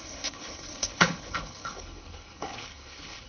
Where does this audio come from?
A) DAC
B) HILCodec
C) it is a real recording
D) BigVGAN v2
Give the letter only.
B